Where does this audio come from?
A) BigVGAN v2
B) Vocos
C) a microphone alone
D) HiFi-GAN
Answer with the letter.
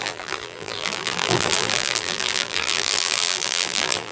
A